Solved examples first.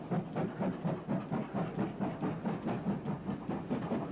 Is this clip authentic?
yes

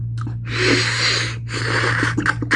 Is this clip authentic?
yes